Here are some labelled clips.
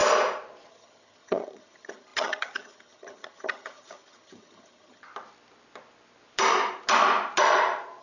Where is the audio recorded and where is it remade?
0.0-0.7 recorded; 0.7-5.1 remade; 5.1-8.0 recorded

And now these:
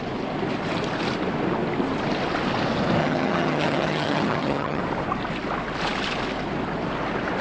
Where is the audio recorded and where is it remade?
0.0-3.0 recorded; 3.0-4.8 remade; 4.8-7.4 recorded

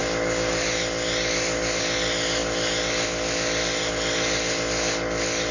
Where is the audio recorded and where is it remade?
0.0-5.5 recorded

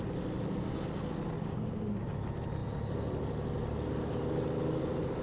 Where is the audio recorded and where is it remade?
0.0-5.2 recorded

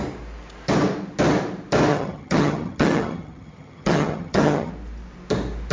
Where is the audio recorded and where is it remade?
0.0-1.9 recorded; 1.9-4.7 remade; 4.7-5.7 recorded

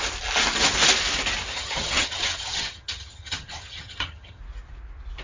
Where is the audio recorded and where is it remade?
0.0-1.5 recorded; 1.5-4.4 remade; 4.4-5.2 recorded

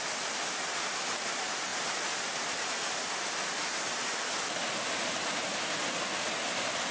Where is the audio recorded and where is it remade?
0.0-6.9 recorded

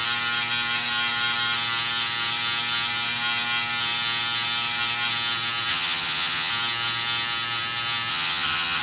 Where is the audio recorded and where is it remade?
0.0-5.7 recorded; 5.7-6.5 remade; 6.5-8.1 recorded; 8.1-8.8 remade